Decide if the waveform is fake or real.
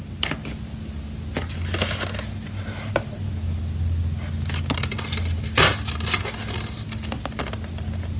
real